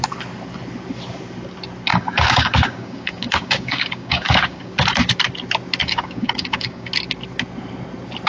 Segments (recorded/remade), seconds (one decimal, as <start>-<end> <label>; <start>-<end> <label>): 0.0-1.9 recorded; 1.9-4.7 remade; 4.7-5.8 recorded; 5.8-6.9 remade; 6.9-8.3 recorded